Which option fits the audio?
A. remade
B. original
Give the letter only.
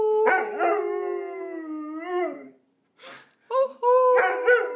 B